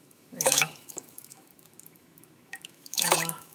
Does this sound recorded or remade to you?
remade